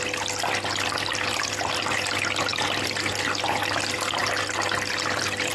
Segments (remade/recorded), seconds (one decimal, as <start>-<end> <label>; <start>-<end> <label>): 0.0-5.5 recorded